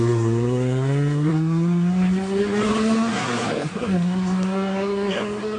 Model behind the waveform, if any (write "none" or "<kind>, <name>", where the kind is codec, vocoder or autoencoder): codec, SNAC